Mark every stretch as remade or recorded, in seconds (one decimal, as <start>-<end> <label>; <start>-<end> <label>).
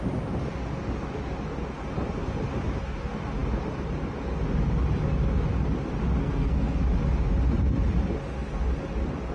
0.0-6.2 recorded; 6.2-6.8 remade; 6.8-9.3 recorded